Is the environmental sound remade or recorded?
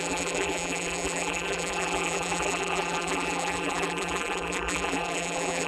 remade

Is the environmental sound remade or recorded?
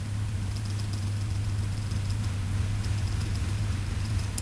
remade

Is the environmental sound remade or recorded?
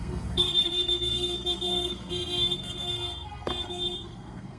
remade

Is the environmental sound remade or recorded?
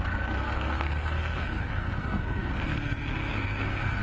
remade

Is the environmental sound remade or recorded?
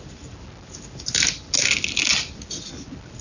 recorded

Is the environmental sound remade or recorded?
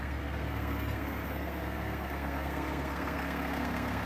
remade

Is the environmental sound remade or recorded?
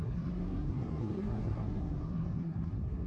remade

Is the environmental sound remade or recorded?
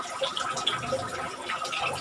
recorded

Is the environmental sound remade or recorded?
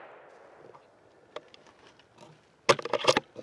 recorded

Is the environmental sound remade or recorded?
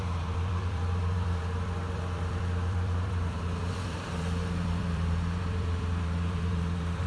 remade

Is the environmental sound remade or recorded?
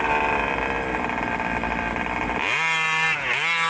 recorded